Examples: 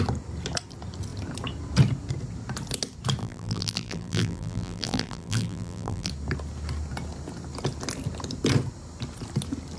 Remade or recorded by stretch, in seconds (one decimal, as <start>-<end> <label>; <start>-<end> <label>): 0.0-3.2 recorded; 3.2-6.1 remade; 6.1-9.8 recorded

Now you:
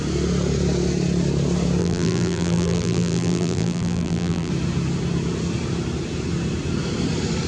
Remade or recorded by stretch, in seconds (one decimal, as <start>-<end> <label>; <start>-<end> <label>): 0.0-1.8 recorded; 1.8-4.5 remade; 4.5-7.5 recorded

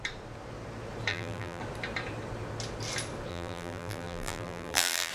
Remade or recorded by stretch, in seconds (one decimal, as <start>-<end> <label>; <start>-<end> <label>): 0.0-1.1 recorded; 1.1-1.6 remade; 1.6-3.3 recorded; 3.3-5.1 remade

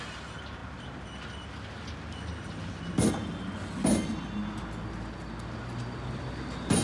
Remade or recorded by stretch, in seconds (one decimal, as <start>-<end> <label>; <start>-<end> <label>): 0.0-6.8 recorded

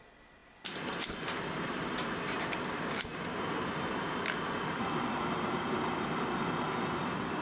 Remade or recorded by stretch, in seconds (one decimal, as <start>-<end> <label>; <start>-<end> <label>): 0.0-7.4 recorded

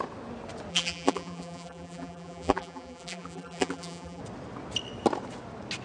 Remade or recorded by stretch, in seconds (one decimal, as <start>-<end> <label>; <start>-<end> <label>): 0.0-0.7 recorded; 0.7-4.2 remade; 4.2-5.8 recorded

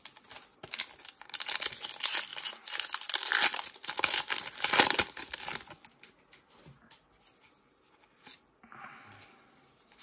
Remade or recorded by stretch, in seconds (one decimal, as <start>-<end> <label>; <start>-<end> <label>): 0.0-10.0 recorded

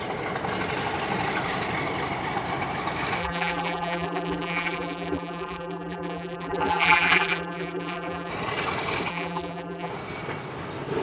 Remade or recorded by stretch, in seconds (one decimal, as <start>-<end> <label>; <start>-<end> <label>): 0.0-3.2 recorded; 3.2-8.3 remade; 8.3-9.1 recorded; 9.1-9.9 remade; 9.9-11.0 recorded